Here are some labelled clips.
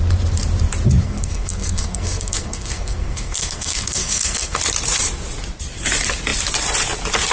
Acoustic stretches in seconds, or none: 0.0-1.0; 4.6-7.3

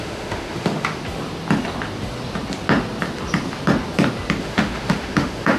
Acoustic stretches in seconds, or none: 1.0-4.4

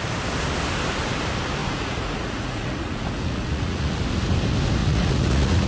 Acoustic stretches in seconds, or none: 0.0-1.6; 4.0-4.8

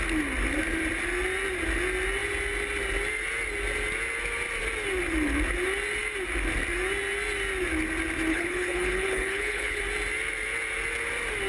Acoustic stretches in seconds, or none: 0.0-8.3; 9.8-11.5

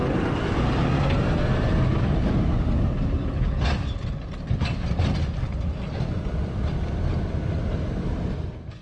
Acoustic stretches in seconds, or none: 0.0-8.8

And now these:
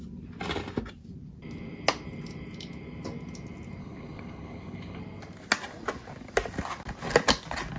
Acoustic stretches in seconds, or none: 0.0-3.8; 5.0-7.8

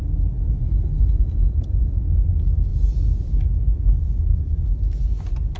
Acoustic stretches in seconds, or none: 0.0-0.6; 2.0-5.6